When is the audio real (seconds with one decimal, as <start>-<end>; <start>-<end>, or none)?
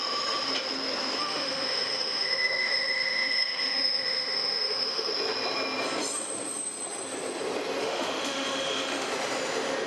0.0-1.2; 5.1-7.8; 9.1-9.9